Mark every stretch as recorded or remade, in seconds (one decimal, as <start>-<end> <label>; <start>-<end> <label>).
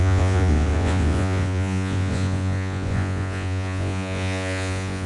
0.0-5.1 remade